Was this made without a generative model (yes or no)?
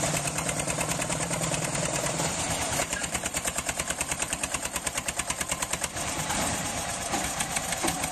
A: no